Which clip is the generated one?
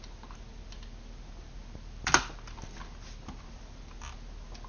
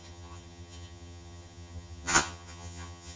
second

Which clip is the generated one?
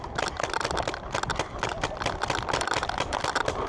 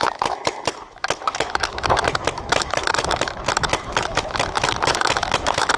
second